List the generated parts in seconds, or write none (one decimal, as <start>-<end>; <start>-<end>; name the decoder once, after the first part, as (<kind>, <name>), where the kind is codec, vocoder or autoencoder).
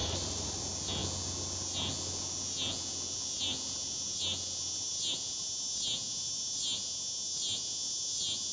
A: 0.0-0.6 (vocoder, Vocos)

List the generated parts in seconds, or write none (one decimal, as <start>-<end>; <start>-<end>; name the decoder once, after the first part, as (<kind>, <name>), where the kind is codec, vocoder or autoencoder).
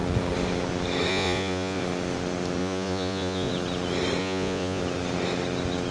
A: 1.1-1.8 (vocoder, Vocos); 2.6-3.5; 4.2-4.8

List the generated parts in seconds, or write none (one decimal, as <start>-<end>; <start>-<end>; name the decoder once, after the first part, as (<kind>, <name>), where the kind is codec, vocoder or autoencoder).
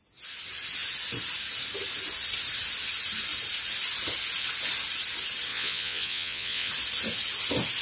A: 5.5-6.7 (vocoder, Vocos)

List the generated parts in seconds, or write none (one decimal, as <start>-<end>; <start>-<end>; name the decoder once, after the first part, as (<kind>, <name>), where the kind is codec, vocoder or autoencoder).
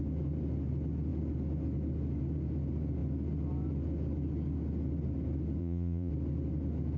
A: 5.6-6.1 (vocoder, Vocos)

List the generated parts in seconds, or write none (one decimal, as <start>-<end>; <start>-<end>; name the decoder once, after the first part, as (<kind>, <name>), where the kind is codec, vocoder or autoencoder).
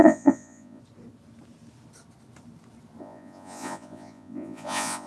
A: 0.0-0.8 (vocoder, Vocos); 3.0-5.1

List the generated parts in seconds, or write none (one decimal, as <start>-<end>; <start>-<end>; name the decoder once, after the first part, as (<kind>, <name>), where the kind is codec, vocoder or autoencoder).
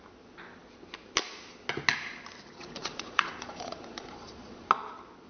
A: 2.6-4.7 (vocoder, Vocos)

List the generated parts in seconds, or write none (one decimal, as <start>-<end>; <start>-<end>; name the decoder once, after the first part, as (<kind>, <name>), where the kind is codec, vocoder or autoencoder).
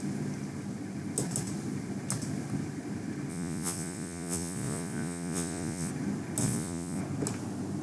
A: 3.3-5.9 (vocoder, Vocos); 6.4-7.0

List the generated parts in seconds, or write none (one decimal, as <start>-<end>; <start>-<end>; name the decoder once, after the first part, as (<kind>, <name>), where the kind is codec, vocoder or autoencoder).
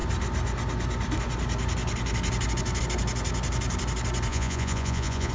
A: 4.3-5.3 (vocoder, Vocos)